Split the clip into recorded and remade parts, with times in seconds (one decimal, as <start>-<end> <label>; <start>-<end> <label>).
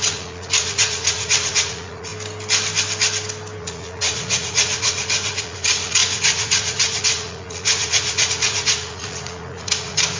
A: 0.0-2.1 remade; 2.1-3.6 recorded; 3.6-10.2 remade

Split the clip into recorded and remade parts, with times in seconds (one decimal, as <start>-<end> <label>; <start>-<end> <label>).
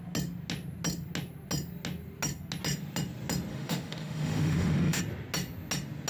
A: 0.0-3.5 recorded; 3.5-5.0 remade; 5.0-6.1 recorded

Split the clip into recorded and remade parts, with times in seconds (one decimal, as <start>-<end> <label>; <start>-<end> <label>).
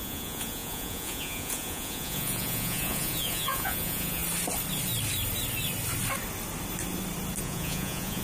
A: 0.0-4.2 remade; 4.2-7.4 recorded; 7.4-8.2 remade